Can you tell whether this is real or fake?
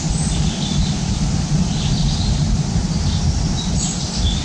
real